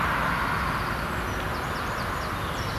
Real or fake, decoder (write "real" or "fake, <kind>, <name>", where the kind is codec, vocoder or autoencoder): real